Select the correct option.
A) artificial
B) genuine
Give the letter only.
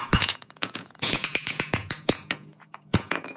A